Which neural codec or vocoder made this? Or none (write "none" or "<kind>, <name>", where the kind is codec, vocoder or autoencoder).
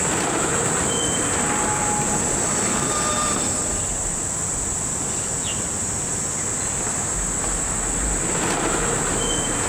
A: none